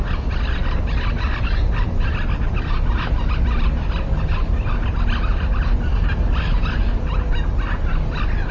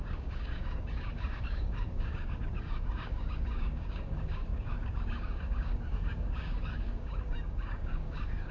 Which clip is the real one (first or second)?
first